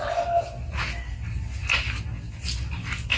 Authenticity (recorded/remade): recorded